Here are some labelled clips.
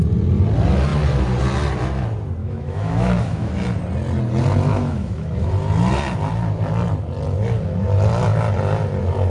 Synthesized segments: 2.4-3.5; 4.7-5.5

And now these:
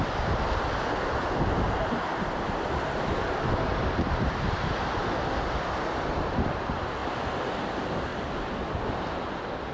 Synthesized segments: 3.7-4.6; 7.0-7.6

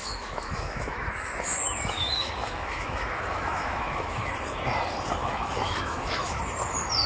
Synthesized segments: 0.0-4.3; 5.2-6.4

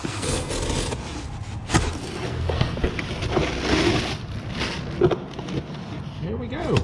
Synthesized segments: 0.0-0.5; 2.3-2.9

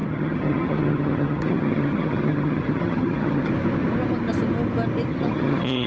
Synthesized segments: 0.0-3.5; 5.1-5.9

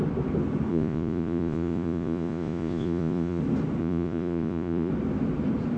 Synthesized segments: 0.7-3.4; 3.8-4.9

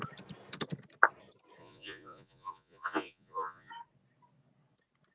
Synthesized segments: 1.6-3.7